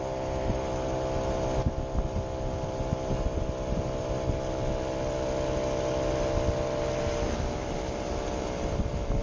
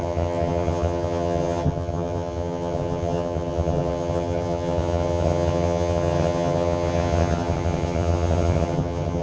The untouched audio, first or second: first